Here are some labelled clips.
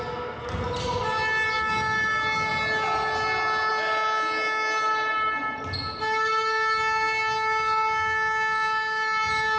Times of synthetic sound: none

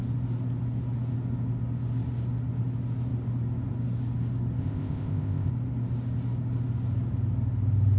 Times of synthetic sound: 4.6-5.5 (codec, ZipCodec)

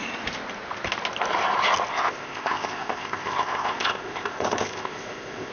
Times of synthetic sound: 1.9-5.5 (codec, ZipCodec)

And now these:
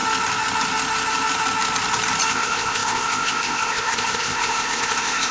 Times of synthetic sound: 2.3-5.3 (codec, ZipCodec)

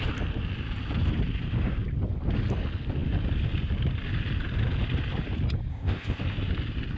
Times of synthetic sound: 5.7-6.2 (codec, ZipCodec)

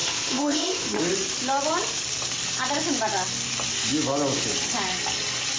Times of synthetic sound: 0.0-1.0 (codec, ZipCodec)